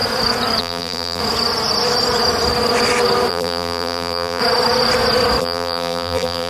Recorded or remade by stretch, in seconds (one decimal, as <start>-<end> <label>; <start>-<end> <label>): 0.0-0.6 recorded; 0.6-1.2 remade; 1.2-3.3 recorded; 3.3-4.4 remade; 4.4-5.4 recorded; 5.4-6.5 remade